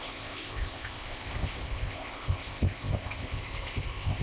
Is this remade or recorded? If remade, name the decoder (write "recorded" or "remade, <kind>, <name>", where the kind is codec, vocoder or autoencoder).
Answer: remade, codec, ZipCodec